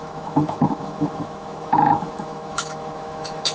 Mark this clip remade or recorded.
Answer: remade